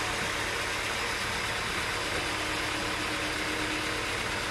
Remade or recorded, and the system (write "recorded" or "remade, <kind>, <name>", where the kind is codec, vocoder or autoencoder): recorded